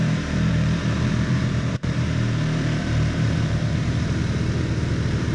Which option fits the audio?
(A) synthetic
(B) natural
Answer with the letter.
A